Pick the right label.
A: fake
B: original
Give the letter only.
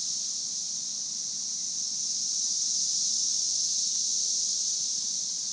B